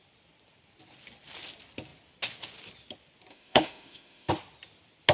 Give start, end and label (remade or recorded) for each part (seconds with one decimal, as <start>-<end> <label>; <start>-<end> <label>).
0.0-3.3 recorded; 3.3-4.3 remade; 4.3-5.1 recorded